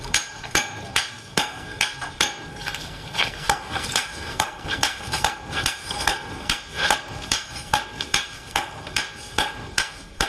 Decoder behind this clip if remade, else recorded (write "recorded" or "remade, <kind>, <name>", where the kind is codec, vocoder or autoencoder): remade, codec, SNAC